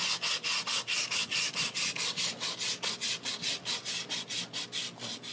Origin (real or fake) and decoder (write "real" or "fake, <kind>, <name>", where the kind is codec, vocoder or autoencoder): real